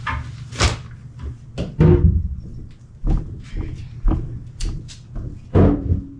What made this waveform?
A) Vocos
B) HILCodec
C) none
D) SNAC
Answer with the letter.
C